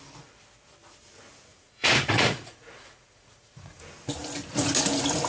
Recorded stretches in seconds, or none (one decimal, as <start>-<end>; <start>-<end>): 0.0-1.5; 3.8-5.3

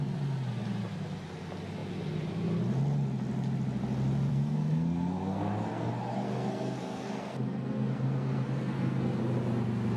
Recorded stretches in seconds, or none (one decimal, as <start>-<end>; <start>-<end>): 0.0-4.3; 9.2-10.0